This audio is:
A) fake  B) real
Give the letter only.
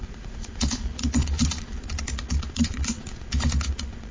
A